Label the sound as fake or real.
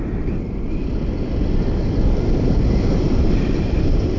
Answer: real